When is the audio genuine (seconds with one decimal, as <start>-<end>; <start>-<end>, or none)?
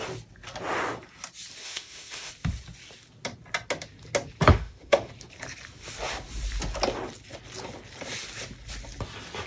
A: 0.0-1.6; 2.3-4.5; 5.1-9.5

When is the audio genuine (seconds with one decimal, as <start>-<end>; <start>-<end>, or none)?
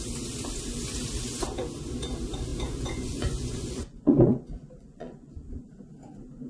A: 0.0-2.5; 5.6-6.5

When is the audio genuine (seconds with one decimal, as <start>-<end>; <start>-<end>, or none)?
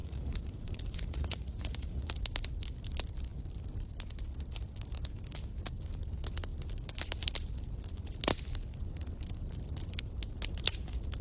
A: 2.1-11.2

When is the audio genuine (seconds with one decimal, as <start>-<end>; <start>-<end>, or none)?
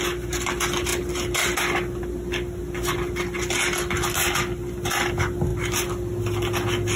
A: 0.0-7.0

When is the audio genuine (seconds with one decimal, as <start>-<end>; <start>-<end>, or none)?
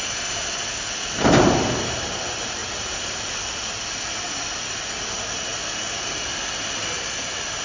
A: 0.0-2.6; 4.4-5.5; 6.5-7.6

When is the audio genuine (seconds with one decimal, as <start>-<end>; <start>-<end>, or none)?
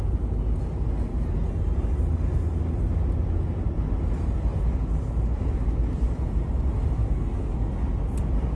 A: 0.0-7.0; 7.5-8.6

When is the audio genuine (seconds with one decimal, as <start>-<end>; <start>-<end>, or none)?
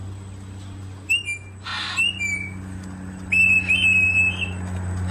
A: 0.0-5.1